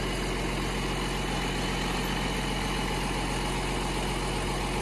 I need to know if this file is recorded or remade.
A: recorded